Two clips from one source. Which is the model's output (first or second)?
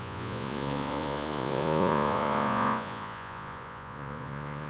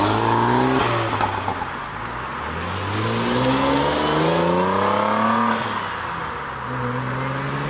first